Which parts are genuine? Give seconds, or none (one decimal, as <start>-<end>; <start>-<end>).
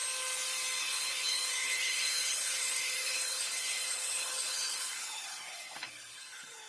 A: 0.0-0.8